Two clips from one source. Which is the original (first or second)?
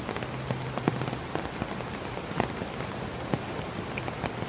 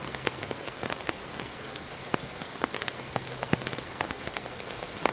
first